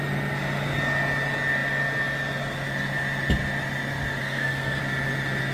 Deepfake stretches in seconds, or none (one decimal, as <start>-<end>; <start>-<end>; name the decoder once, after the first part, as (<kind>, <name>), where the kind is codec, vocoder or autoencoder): 4.2-4.8 (codec, SNAC)